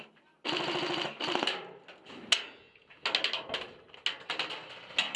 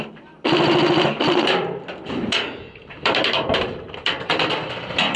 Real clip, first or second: first